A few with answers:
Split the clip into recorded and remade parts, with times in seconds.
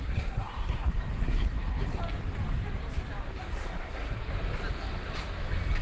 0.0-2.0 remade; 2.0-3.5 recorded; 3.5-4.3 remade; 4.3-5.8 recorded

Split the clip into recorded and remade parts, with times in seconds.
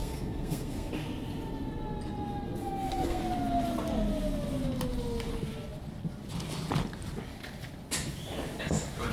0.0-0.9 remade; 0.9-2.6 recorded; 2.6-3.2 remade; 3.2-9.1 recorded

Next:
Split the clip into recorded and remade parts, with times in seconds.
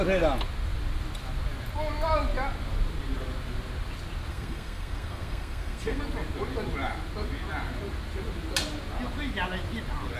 0.0-4.3 recorded; 4.3-6.0 remade; 6.0-10.2 recorded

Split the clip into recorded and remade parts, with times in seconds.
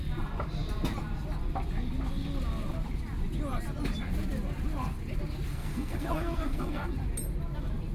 0.0-5.5 recorded; 5.5-6.9 remade; 6.9-7.9 recorded